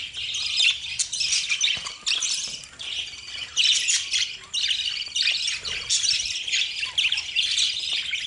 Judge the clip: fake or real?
real